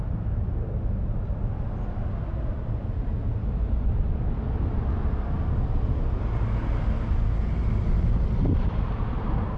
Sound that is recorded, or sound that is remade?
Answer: recorded